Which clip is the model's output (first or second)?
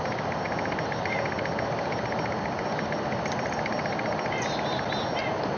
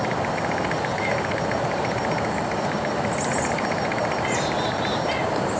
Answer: second